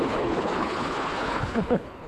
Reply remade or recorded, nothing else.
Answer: remade